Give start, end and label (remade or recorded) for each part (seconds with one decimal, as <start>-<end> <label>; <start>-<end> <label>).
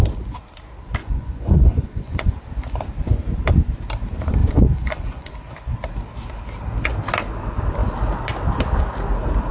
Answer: 0.0-1.0 recorded; 1.0-2.3 remade; 2.3-4.4 recorded; 4.4-5.3 remade; 5.3-9.5 recorded